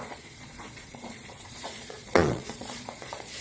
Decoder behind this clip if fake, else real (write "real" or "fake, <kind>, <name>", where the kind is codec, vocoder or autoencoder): fake, vocoder, Vocos